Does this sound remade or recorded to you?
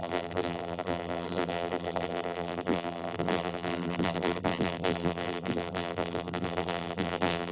remade